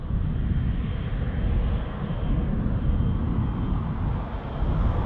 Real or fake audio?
real